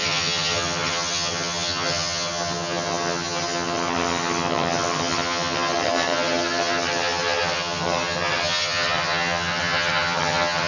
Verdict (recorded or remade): remade